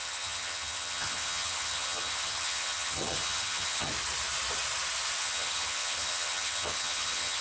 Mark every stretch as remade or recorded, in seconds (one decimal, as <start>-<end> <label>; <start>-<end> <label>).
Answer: 0.0-3.9 remade; 3.9-5.2 recorded; 5.2-7.4 remade